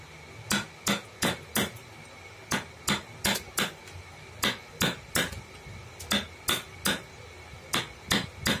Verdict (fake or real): real